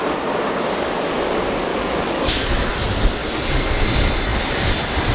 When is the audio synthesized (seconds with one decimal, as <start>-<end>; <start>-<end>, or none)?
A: 1.7-2.7